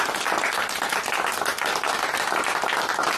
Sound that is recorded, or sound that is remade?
recorded